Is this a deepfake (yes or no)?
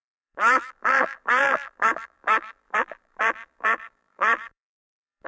yes